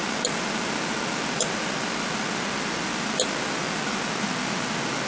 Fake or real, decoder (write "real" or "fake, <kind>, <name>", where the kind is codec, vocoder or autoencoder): real